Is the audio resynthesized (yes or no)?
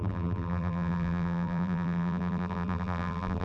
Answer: yes